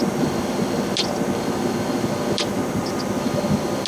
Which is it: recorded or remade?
recorded